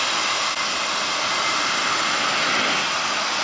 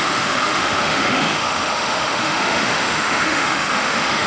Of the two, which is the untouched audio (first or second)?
first